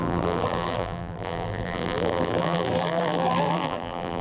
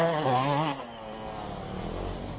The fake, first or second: first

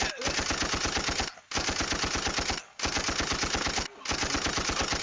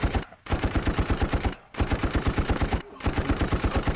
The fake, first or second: second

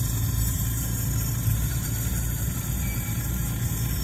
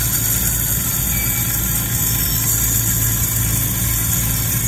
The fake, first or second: first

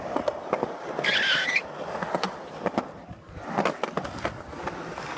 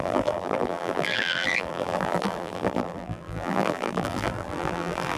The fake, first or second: second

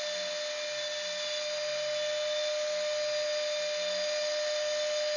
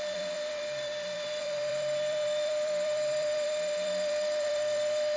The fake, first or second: second